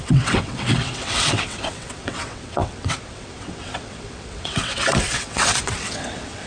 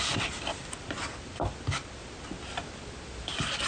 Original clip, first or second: second